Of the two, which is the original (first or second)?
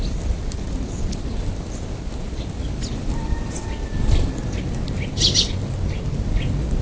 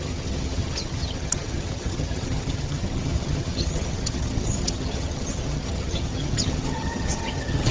first